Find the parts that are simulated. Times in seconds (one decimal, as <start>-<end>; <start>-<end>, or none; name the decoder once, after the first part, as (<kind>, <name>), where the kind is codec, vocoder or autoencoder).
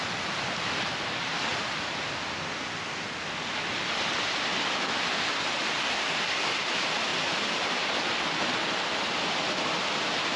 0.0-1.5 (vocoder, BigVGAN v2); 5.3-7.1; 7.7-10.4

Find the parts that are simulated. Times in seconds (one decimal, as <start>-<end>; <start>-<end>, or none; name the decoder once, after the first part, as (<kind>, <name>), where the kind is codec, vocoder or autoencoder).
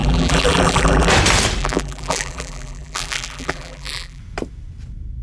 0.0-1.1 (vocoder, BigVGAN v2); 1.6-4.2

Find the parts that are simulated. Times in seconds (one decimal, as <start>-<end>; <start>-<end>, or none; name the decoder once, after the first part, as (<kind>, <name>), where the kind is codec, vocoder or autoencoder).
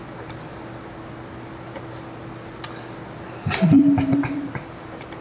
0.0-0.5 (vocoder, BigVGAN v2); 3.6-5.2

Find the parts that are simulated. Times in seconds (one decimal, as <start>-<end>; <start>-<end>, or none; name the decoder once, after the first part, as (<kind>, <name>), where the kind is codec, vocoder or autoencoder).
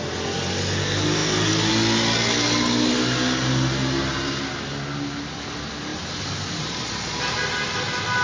3.8-4.5 (vocoder, BigVGAN v2); 5.9-6.9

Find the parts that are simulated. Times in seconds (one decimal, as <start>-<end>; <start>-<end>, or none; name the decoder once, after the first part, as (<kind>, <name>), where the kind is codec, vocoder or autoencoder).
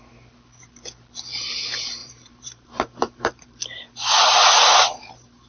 2.0-5.5 (vocoder, BigVGAN v2)